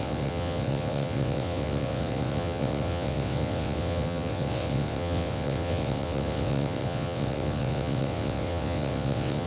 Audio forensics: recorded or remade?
remade